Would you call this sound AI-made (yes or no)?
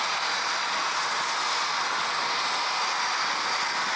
no